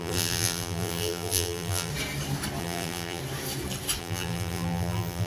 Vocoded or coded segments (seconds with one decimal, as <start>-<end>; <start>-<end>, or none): 0.0-1.9; 2.6-3.2; 4.0-5.3